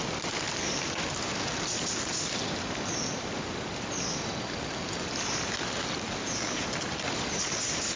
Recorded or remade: recorded